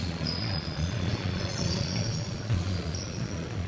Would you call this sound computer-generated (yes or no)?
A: yes